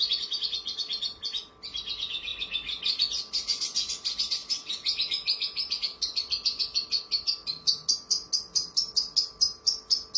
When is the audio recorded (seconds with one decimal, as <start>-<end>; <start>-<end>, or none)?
0.0-10.2